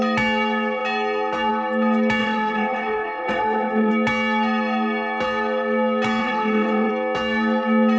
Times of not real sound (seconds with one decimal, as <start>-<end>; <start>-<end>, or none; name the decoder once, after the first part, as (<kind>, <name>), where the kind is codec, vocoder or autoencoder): 2.2-3.9 (vocoder, WaveNeXt); 6.2-6.9